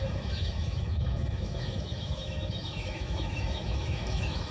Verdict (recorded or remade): remade